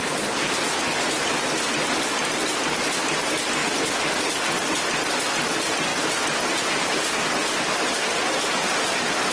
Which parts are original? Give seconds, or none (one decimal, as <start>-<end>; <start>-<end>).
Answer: 0.0-9.3